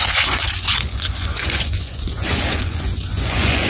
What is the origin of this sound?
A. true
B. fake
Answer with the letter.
B